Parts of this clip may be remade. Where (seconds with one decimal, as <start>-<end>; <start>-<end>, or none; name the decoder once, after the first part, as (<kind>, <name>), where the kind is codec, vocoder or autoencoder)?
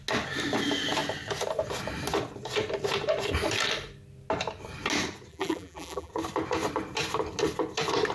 5.3-6.1 (vocoder, BigVGAN v2)